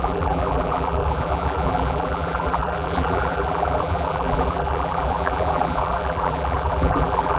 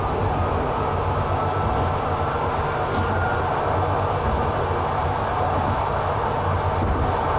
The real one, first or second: second